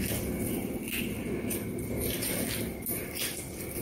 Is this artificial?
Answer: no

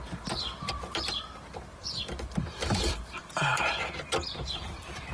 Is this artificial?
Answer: yes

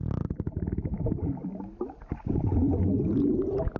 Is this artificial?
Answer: no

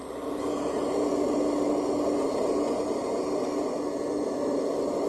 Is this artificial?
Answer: no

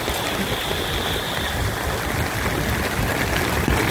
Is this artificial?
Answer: no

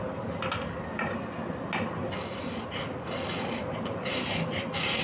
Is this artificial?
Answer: no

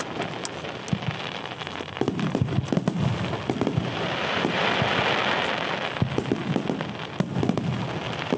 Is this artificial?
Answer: no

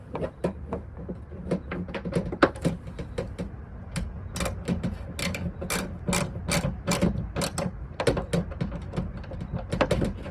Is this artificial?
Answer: no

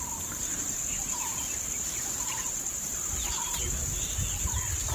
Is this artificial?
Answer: no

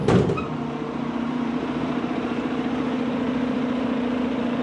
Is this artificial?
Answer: yes